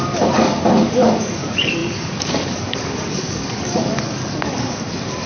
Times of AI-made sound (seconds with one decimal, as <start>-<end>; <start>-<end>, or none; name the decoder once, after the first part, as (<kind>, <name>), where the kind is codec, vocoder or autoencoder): 0.0-5.3 (codec, DAC)